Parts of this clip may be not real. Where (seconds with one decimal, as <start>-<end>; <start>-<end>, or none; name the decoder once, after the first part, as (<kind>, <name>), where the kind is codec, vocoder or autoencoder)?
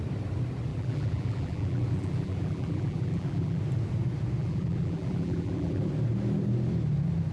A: 0.7-3.6 (vocoder, BigVGAN v2); 4.4-5.8